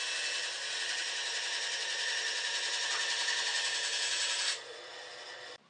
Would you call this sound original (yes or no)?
yes